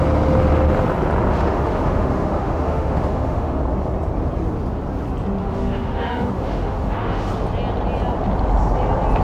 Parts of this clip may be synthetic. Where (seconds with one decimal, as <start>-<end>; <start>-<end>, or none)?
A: 1.3-3.6; 5.4-7.3